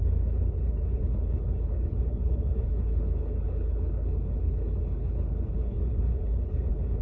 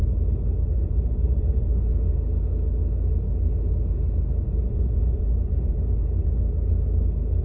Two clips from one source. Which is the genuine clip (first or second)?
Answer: second